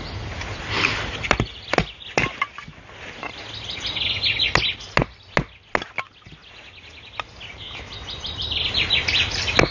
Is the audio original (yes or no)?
yes